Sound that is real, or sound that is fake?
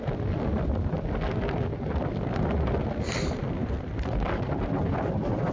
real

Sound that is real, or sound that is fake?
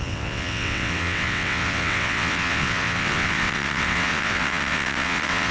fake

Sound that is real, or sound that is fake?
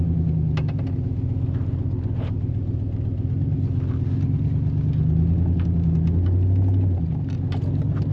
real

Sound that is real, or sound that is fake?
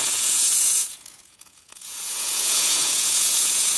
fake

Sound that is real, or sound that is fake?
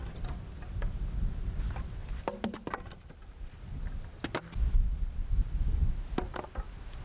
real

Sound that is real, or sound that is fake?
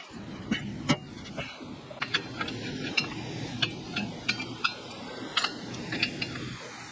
real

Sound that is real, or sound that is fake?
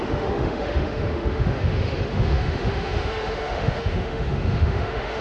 fake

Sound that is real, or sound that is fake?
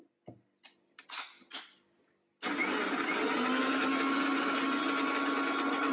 real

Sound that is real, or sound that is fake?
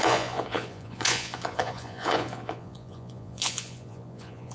fake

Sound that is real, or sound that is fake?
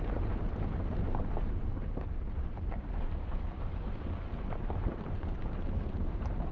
fake